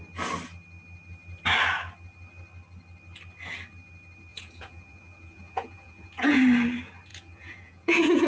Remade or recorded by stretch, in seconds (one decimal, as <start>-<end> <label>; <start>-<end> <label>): 0.0-4.3 recorded; 4.3-6.4 remade; 6.4-7.1 recorded; 7.1-8.3 remade

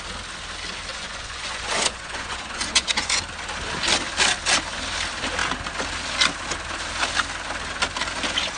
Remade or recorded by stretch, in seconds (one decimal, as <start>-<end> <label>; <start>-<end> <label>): 0.0-0.9 recorded; 0.9-3.2 remade; 3.2-8.6 recorded